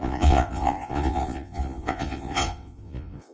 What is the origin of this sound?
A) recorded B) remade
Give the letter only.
B